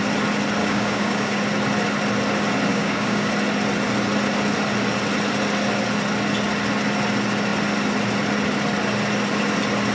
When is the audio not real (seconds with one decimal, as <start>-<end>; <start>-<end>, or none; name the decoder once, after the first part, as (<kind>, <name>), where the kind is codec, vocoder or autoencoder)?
0.6-1.4 (codec, DAC); 2.7-3.3